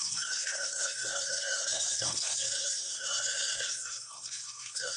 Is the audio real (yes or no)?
no